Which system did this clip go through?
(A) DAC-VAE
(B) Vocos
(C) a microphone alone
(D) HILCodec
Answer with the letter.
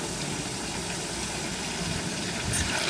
C